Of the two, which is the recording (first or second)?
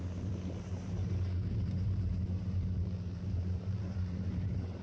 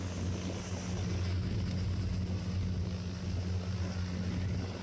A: second